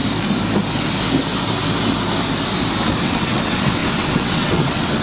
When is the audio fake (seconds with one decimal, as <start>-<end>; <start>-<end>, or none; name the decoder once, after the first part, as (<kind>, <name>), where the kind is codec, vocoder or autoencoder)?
3.0-5.0 (vocoder, WaveNeXt)